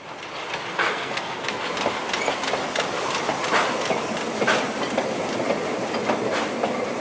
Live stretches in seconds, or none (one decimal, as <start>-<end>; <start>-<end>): 0.0-0.7; 1.6-7.0